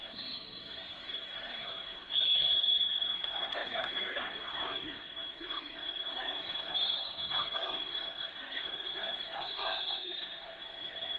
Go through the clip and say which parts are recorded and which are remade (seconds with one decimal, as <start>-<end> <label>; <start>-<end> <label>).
0.0-11.2 remade